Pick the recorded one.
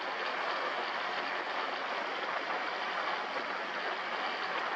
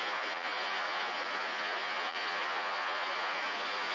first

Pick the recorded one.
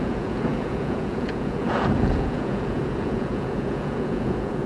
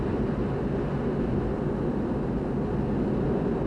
second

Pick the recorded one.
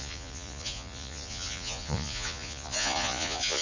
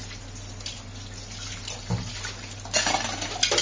second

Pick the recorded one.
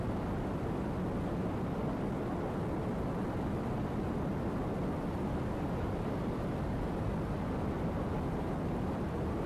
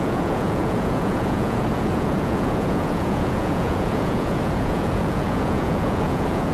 first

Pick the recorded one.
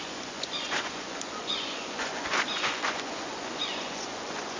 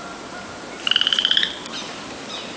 second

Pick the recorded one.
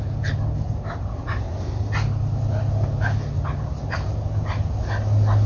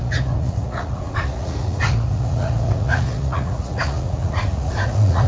first